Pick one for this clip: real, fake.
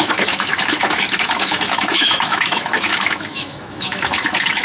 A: fake